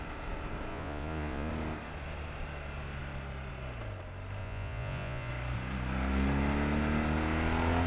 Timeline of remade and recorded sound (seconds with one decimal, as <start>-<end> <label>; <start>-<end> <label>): 0.0-0.7 recorded; 0.7-1.5 remade; 1.5-4.4 recorded; 4.4-5.3 remade; 5.3-7.9 recorded